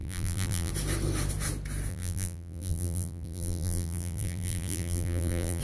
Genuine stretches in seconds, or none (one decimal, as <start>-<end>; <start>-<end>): 0.7-1.9